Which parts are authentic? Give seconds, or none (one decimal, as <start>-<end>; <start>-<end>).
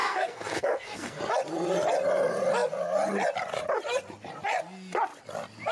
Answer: 1.2-5.7